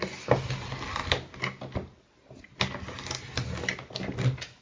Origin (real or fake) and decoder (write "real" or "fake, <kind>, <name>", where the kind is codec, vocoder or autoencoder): real